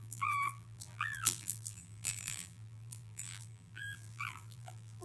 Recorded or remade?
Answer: remade